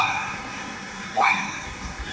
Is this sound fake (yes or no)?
yes